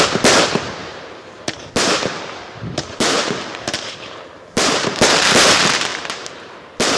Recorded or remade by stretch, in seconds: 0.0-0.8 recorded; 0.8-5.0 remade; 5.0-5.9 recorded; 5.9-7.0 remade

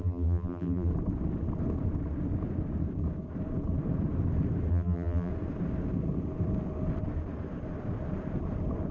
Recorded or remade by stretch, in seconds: 0.0-0.9 remade; 0.9-4.7 recorded; 4.7-5.3 remade; 5.3-8.9 recorded

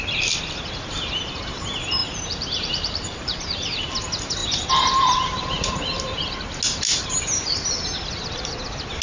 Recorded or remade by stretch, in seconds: 0.0-2.0 recorded; 2.0-3.8 remade; 3.8-4.4 recorded; 4.4-6.3 remade; 6.3-9.0 recorded

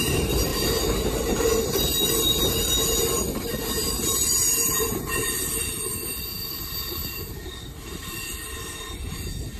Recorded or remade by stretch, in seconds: 0.0-0.5 remade; 0.5-2.1 recorded; 2.1-5.9 remade; 5.9-6.6 recorded; 6.6-9.6 remade